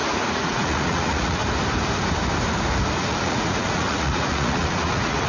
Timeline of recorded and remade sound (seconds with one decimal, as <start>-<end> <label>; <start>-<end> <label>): 0.0-1.4 remade; 1.4-3.0 recorded; 3.0-5.3 remade